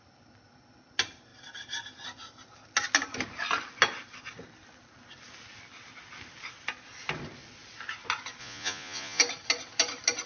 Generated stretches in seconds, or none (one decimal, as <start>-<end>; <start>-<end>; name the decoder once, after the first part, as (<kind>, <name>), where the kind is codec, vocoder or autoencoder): 8.4-9.2 (vocoder, Vocos)